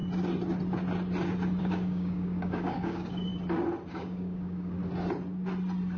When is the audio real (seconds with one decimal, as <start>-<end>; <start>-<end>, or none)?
0.0-1.6; 3.3-3.9; 4.8-6.0